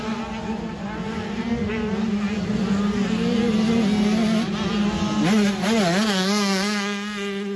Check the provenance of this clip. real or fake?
real